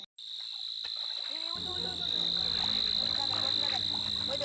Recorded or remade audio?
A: recorded